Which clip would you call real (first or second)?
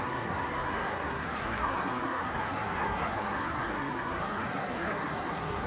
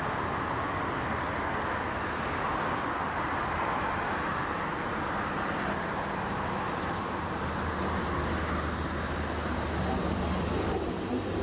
second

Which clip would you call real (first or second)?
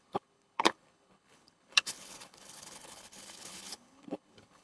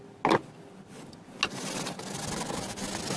second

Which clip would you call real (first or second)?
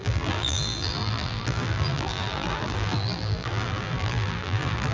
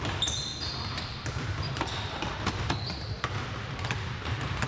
second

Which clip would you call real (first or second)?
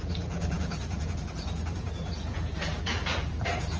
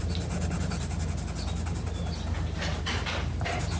second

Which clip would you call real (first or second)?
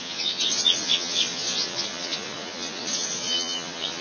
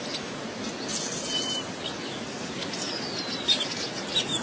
second